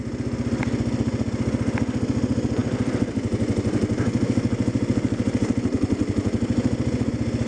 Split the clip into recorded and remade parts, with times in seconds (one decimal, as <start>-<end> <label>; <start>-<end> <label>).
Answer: 0.0-2.6 recorded; 2.6-7.1 remade; 7.1-7.5 recorded